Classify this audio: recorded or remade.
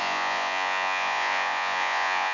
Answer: remade